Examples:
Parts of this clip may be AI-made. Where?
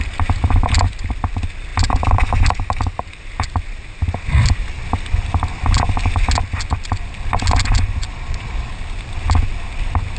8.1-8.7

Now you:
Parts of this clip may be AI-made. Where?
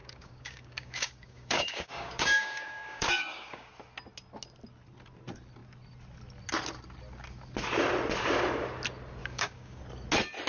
0.0-3.7; 9.2-9.8